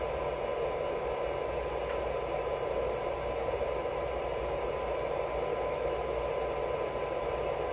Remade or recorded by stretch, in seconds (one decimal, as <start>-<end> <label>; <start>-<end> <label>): 0.0-5.5 recorded; 5.5-6.1 remade; 6.1-7.7 recorded